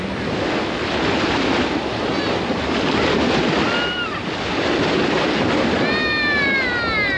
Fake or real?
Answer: real